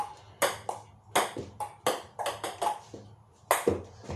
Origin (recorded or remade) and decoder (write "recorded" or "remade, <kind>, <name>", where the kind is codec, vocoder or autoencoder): recorded